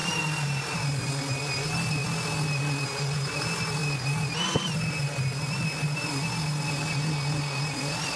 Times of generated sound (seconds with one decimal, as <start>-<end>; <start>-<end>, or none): 0.0-1.1